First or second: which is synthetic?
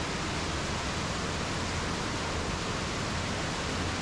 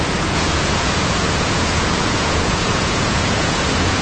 second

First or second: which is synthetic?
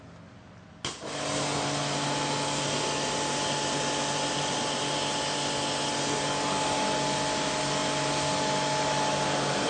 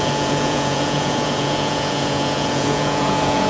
second